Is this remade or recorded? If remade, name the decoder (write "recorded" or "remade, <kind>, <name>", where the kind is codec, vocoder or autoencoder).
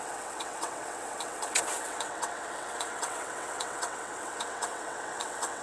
remade, vocoder, WaveNeXt